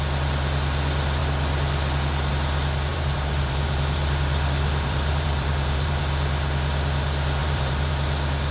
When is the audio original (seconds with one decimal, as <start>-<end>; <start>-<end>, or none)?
0.0-2.9; 6.0-7.4; 7.9-8.5